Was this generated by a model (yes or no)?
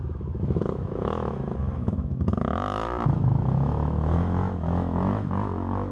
yes